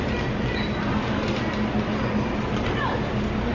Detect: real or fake real